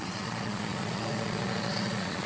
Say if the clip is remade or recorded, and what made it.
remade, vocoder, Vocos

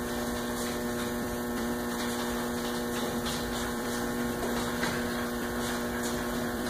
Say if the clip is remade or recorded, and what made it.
remade, vocoder, BigVGAN v2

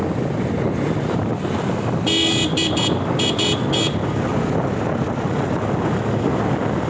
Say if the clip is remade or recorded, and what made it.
recorded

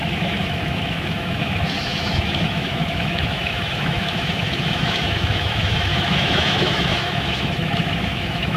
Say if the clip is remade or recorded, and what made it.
remade, autoencoder, DAC-VAE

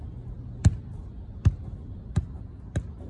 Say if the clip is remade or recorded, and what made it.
recorded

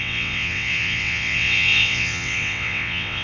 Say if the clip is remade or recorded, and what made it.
remade, vocoder, WaveNeXt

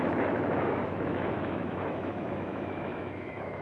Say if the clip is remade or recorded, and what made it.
remade, autoencoder, DAC-VAE